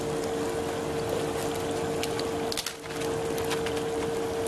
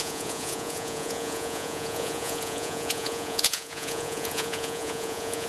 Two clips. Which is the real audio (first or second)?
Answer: first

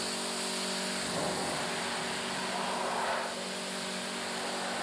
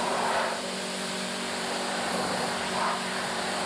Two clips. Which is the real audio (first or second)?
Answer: first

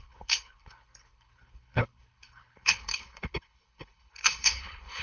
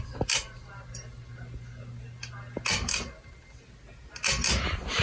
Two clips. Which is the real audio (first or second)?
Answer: second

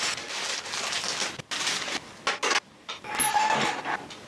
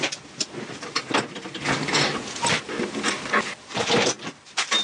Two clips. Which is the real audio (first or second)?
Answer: first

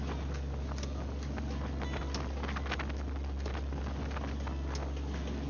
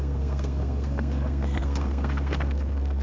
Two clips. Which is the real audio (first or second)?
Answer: first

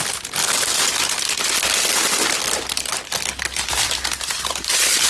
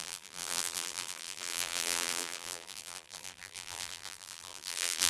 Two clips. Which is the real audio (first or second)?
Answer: first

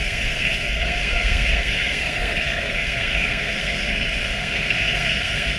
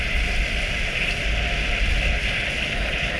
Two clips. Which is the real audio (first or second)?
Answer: second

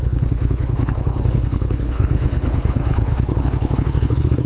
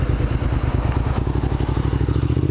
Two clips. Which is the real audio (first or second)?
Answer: second